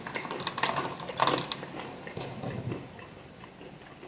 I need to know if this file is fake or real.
real